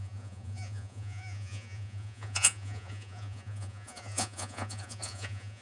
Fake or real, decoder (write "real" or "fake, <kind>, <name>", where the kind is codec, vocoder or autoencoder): fake, vocoder, Vocos